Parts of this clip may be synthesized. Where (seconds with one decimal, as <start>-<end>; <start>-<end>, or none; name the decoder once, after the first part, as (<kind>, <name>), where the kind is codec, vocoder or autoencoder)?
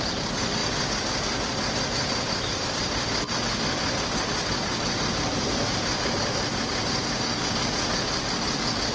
none